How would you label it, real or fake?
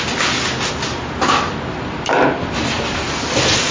real